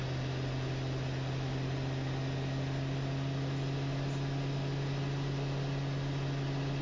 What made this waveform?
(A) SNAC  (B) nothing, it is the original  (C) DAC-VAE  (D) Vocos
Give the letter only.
B